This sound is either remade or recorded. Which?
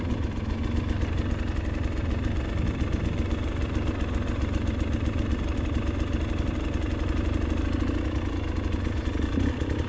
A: recorded